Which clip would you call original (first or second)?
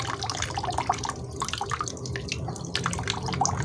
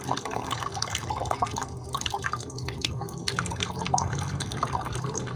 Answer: first